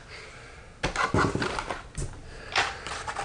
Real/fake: real